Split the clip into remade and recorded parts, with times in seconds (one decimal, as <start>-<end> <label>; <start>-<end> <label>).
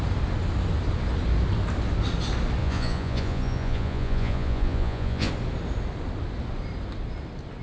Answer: 0.0-2.6 recorded; 2.6-5.3 remade; 5.3-7.6 recorded